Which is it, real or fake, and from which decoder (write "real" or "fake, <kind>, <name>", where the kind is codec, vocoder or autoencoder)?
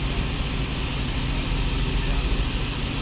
real